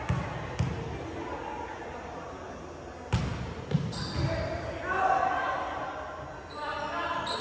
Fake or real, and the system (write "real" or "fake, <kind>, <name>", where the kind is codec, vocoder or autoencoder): real